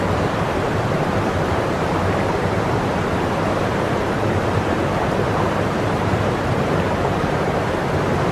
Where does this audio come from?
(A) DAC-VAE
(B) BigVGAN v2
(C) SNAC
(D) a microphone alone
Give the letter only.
B